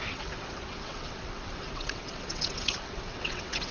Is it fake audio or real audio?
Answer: fake